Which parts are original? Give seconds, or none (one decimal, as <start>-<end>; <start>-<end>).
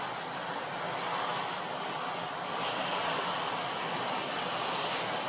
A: 0.0-5.3